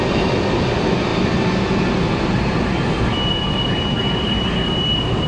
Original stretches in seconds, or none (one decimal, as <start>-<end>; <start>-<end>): 0.0-5.3